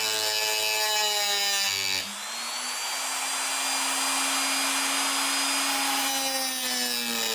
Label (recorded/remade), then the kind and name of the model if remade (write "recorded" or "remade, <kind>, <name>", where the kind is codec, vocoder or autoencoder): recorded